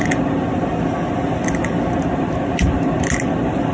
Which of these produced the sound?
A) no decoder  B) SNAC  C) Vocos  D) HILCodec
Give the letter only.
A